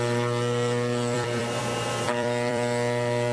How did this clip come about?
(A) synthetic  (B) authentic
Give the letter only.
A